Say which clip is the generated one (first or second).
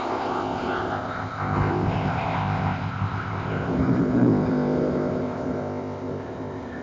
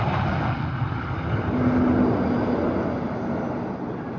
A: first